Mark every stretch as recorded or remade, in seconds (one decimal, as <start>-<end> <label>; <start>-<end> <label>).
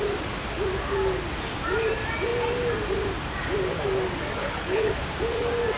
0.0-4.4 recorded; 4.4-4.9 remade; 4.9-5.8 recorded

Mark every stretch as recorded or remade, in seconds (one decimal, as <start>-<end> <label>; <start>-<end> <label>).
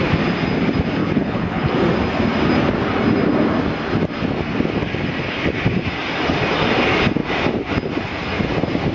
0.0-1.0 recorded; 1.0-1.7 remade; 1.7-8.9 recorded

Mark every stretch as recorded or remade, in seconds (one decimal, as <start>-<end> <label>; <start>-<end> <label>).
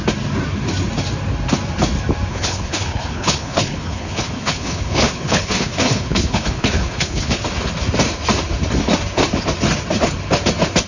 0.0-2.3 recorded; 2.3-7.4 remade; 7.4-10.9 recorded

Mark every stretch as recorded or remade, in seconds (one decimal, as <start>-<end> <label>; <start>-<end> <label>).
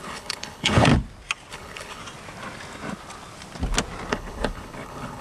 0.0-0.9 remade; 0.9-1.5 recorded; 1.5-2.0 remade; 2.0-4.1 recorded; 4.1-5.2 remade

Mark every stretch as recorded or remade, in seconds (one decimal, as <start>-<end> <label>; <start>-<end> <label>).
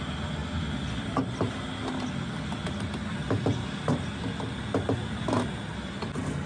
0.0-6.5 recorded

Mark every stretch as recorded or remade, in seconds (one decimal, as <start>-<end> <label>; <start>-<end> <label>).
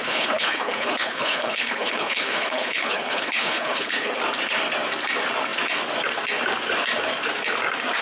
0.0-4.2 remade; 4.2-8.0 recorded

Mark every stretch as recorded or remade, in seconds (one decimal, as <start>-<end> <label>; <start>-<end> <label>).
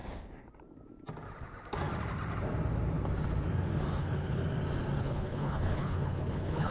0.0-4.0 recorded; 4.0-4.4 remade; 4.4-5.0 recorded; 5.0-6.7 remade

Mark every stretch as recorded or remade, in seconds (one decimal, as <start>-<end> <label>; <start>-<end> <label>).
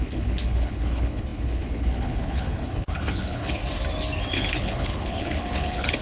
0.0-3.6 remade; 3.6-4.3 recorded; 4.3-6.0 remade